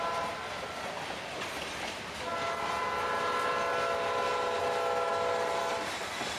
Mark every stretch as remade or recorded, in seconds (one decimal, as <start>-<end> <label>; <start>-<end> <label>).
0.0-6.4 recorded